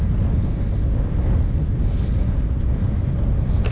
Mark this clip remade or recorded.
recorded